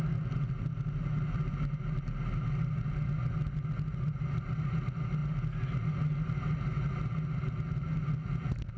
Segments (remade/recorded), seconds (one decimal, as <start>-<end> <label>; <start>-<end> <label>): 0.0-8.8 recorded